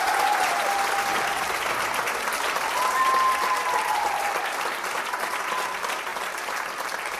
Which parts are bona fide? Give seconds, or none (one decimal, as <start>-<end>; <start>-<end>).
0.0-7.2